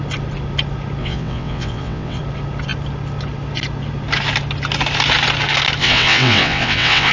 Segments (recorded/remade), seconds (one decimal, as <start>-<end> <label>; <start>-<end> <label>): 0.0-1.0 recorded; 1.0-2.2 remade; 2.2-5.8 recorded; 5.8-7.1 remade